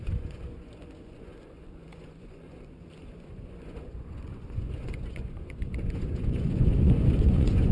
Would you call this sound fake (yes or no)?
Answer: yes